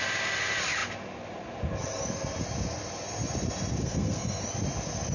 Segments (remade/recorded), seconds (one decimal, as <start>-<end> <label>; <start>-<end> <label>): 0.0-3.8 recorded; 3.8-4.4 remade; 4.4-5.1 recorded